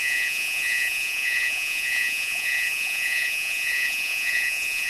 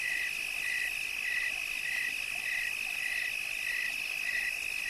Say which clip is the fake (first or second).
first